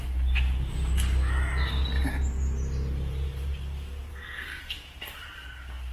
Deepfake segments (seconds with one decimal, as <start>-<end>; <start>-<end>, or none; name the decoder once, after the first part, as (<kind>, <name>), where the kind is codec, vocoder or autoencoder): 4.1-4.6 (codec, SNAC)